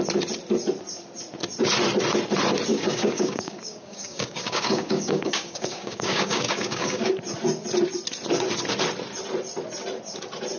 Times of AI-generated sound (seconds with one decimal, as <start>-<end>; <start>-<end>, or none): 2.7-7.1